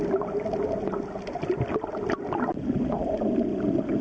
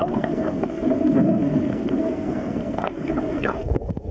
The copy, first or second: second